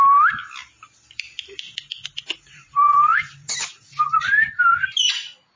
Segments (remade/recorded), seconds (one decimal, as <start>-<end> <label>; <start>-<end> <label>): 0.0-0.4 remade; 0.4-2.5 recorded; 2.5-3.1 remade; 3.1-4.8 recorded; 4.8-5.6 remade